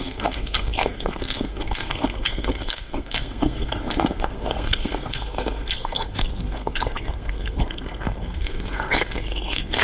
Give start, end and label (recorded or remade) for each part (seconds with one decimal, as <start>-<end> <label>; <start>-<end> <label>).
0.0-9.8 remade